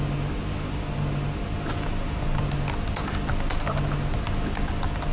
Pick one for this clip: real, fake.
real